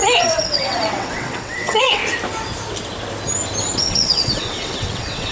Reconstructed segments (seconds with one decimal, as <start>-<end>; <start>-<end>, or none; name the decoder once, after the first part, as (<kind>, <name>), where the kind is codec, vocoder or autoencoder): 0.0-2.0 (vocoder, WaveNeXt); 3.8-5.3